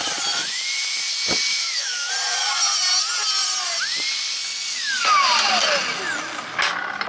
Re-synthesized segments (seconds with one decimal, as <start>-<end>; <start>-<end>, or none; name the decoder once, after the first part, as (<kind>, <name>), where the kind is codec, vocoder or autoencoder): 0.4-1.0 (autoencoder, DAC-VAE); 1.5-2.1